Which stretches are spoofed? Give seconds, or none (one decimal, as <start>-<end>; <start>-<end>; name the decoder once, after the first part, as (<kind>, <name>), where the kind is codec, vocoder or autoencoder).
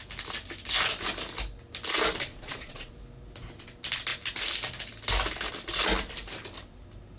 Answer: 2.3-2.9 (vocoder, Vocos)